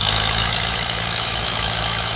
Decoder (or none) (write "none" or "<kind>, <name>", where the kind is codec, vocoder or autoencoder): autoencoder, DAC-VAE